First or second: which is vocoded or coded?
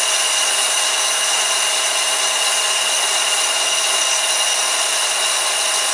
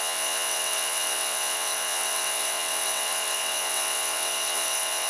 second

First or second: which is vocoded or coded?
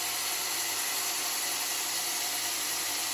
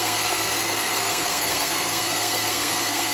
second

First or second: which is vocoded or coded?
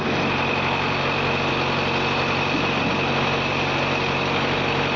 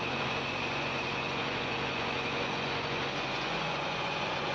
second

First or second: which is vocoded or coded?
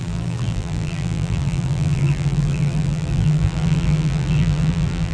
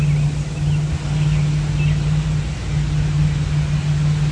first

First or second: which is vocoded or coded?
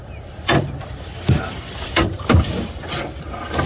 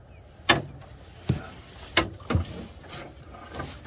first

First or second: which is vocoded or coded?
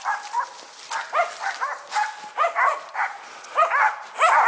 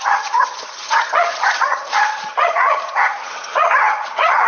second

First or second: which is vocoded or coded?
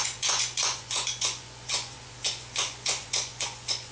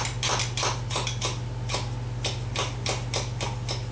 first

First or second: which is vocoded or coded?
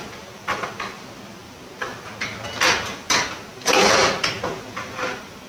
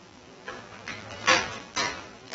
second